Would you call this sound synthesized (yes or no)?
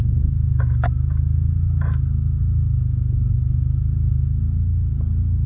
no